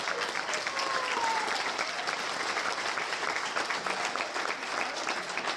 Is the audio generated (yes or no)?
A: no